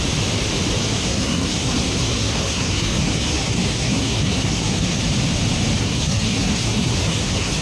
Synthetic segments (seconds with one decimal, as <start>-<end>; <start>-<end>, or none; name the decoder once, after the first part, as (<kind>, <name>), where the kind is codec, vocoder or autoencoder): 0.8-5.0 (codec, SNAC); 5.8-7.6